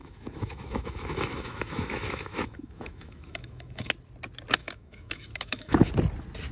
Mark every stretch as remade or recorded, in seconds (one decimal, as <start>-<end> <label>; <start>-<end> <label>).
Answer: 0.0-3.9 remade; 3.9-4.6 recorded; 4.6-5.9 remade; 5.9-6.5 recorded